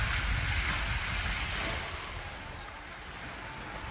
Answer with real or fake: real